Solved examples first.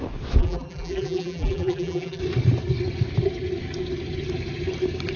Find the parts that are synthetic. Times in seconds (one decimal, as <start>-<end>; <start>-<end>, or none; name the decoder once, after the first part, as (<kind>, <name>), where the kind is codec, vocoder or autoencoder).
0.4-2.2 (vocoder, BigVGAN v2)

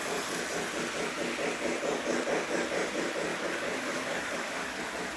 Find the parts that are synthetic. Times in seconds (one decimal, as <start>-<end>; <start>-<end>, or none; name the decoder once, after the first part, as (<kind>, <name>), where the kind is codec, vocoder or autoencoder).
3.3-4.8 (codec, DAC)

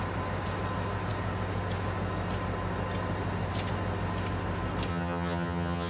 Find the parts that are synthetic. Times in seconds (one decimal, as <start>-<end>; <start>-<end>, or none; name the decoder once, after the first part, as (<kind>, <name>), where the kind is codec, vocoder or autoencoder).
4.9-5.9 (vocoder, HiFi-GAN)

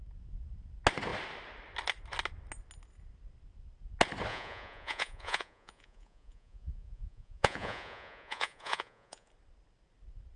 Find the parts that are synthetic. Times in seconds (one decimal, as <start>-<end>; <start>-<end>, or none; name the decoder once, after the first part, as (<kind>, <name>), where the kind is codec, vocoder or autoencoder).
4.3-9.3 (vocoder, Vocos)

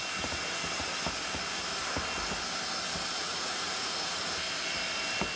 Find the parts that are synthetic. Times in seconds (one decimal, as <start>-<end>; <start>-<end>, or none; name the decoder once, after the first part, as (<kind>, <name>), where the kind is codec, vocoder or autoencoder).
3.2-4.2 (vocoder, Vocos)

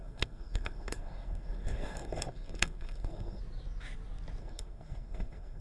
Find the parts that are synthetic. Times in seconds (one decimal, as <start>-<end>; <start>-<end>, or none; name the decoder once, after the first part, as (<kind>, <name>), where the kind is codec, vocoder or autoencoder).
0.0-3.4 (codec, SNAC); 4.4-5.6

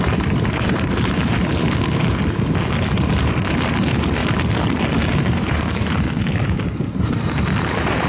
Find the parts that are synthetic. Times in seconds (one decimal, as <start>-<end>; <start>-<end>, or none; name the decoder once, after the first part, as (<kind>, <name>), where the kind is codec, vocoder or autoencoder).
0.0-4.2 (vocoder, BigVGAN v2); 5.1-8.1

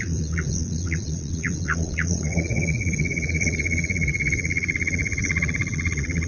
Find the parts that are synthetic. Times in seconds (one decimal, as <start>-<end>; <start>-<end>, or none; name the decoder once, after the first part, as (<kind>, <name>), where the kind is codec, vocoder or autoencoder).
0.0-6.3 (vocoder, Vocos)